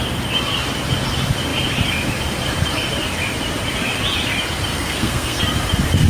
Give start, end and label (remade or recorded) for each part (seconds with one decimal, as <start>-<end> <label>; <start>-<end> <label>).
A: 0.0-4.7 recorded; 4.7-5.4 remade; 5.4-6.1 recorded